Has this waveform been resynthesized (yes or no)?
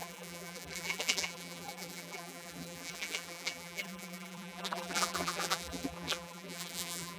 yes